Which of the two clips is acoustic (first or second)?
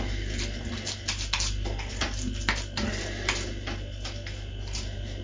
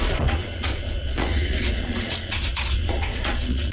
first